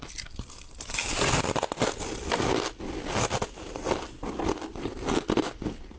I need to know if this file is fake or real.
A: real